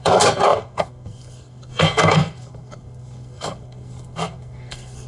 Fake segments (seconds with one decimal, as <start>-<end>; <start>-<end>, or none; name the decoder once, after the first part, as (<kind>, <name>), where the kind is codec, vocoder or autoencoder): 0.0-5.1 (codec, SNAC)